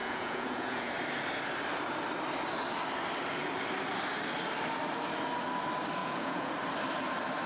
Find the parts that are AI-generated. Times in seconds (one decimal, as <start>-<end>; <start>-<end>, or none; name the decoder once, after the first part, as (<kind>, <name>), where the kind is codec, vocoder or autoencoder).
0.0-0.9 (vocoder, Vocos); 6.0-6.5